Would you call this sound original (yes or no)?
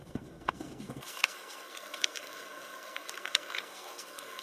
no